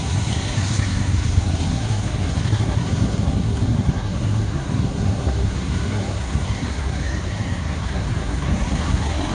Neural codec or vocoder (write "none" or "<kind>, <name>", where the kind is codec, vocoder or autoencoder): codec, SNAC